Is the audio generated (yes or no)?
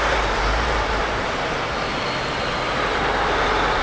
yes